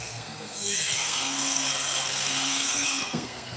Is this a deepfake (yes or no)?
yes